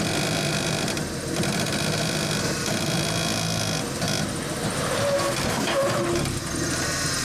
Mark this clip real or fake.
real